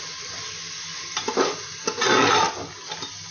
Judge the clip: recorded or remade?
recorded